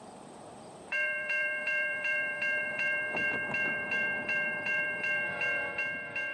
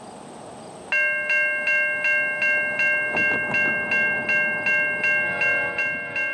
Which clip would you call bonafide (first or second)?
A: second